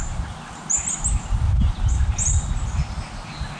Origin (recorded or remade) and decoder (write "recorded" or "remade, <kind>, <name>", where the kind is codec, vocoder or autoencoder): recorded